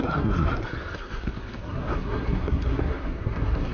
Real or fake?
fake